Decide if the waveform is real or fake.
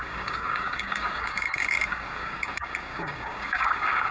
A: fake